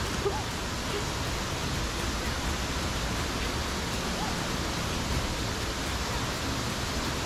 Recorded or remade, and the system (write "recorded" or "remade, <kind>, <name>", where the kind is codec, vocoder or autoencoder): recorded